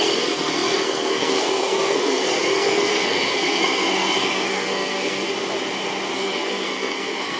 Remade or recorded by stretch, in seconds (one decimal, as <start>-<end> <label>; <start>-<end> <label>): 0.0-5.3 remade; 5.3-6.1 recorded; 6.1-7.4 remade

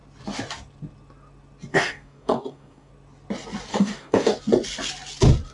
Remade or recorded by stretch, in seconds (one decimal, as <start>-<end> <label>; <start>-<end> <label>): 0.0-1.7 recorded; 1.7-2.9 remade; 2.9-3.7 recorded; 3.7-4.4 remade; 4.4-5.5 recorded

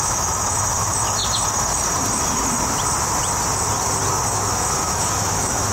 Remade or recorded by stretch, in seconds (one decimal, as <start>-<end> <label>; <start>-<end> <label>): 0.0-1.2 remade; 1.2-4.3 recorded; 4.3-5.7 remade